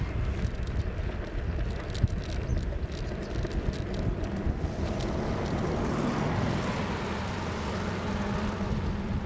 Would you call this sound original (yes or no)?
yes